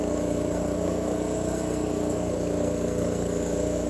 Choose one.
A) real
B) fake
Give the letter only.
B